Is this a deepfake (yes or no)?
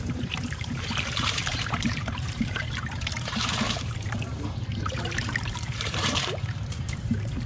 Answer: yes